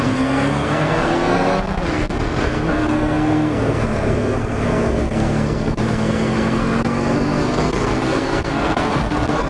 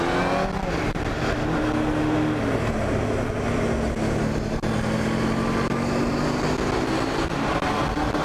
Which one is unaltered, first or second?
second